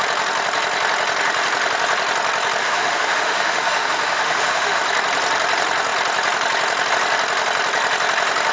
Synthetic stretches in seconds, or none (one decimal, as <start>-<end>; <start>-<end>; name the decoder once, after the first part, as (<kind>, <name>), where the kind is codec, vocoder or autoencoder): 2.6-4.8 (autoencoder, DAC-VAE)